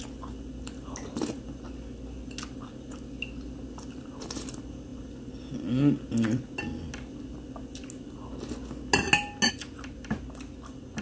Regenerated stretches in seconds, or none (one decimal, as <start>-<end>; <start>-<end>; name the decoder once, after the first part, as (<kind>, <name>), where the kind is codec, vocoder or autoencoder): none